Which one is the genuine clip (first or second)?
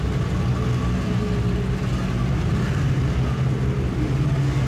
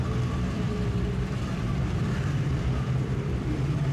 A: first